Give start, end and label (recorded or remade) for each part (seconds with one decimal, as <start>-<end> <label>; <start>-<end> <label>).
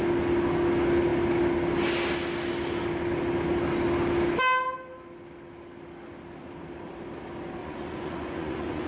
0.0-7.6 recorded; 7.6-8.9 remade